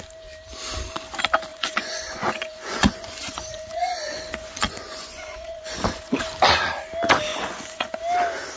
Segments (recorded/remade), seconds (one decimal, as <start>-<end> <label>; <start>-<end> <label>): 0.0-1.5 recorded; 1.5-6.2 remade; 6.2-7.3 recorded; 7.3-8.0 remade; 8.0-8.6 recorded